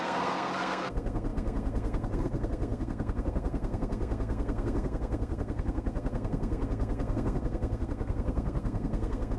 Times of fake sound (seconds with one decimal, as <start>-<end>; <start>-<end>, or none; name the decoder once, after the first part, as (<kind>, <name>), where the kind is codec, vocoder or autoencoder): 0.0-9.4 (codec, SNAC)